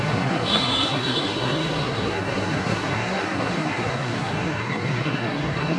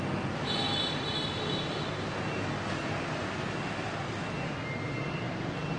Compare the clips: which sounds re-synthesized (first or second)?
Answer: first